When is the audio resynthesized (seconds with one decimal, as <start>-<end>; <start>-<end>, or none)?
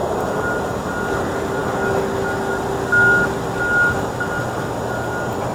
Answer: none